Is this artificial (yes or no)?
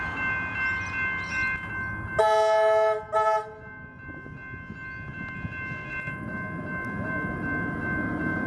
no